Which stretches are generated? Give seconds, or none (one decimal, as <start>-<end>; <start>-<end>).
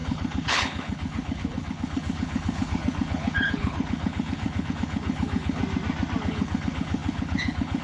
0.0-5.6; 6.2-7.8